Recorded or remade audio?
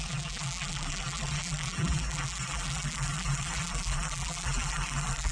remade